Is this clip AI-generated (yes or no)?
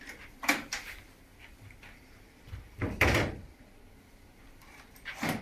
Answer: yes